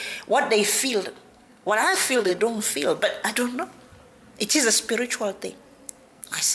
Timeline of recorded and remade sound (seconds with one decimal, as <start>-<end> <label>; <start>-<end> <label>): 0.0-1.3 recorded; 1.3-2.3 remade; 2.3-6.1 recorded; 6.1-6.5 remade